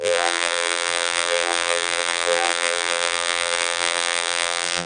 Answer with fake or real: fake